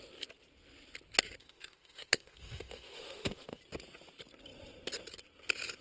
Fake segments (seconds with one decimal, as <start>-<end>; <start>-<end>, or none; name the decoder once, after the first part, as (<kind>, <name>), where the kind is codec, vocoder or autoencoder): 1.4-3.6 (autoencoder, DAC-VAE)